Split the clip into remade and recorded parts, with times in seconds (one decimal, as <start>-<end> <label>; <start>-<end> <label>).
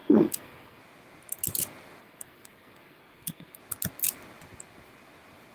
0.0-0.8 remade; 0.8-2.0 recorded; 2.0-3.6 remade; 3.6-5.5 recorded